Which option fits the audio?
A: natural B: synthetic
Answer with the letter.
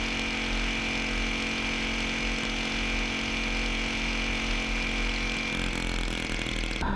A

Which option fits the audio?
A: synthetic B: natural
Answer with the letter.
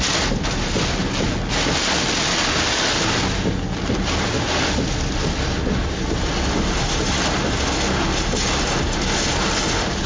B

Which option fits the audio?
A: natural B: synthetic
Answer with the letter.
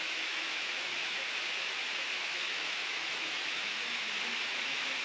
B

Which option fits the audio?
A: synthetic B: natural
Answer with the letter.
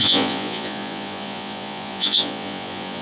A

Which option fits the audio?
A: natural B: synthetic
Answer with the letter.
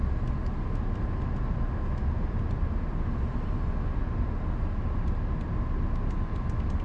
A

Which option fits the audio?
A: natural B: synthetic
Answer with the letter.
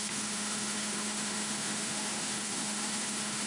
B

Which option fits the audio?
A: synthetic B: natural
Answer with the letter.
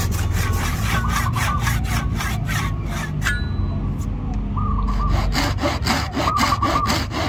B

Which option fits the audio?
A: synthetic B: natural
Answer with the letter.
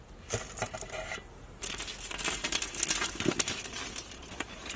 B